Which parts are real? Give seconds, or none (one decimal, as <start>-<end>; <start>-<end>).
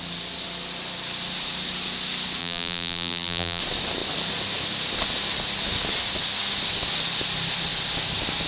0.0-2.4; 3.6-8.5